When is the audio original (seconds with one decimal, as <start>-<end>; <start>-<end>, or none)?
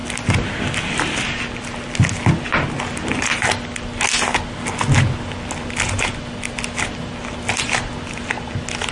0.0-8.9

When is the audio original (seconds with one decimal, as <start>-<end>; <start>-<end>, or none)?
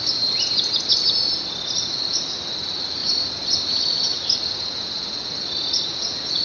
0.0-3.0; 3.5-6.4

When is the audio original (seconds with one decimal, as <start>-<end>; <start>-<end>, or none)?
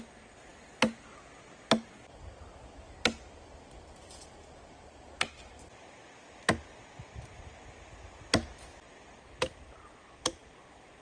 0.0-11.0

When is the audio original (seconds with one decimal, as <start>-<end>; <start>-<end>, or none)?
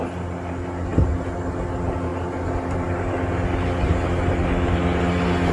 0.0-5.5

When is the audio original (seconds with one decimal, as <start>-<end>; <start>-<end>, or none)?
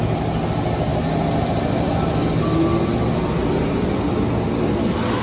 0.0-5.2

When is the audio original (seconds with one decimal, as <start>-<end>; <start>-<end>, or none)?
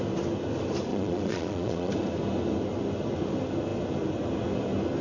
0.0-0.9; 1.9-5.0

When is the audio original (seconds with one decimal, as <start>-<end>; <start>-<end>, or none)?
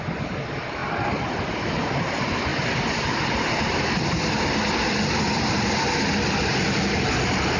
0.0-2.5; 5.6-7.6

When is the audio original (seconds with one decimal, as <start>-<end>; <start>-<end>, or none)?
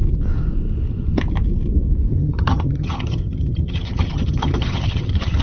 0.0-2.1